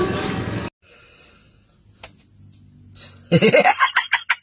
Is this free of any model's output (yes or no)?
yes